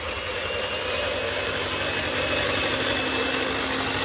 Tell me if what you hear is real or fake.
real